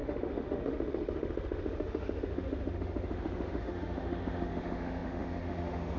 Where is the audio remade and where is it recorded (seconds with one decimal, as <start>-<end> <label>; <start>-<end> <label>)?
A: 0.0-6.0 remade